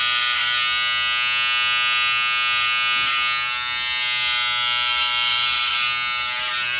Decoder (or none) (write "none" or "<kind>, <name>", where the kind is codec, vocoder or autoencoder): none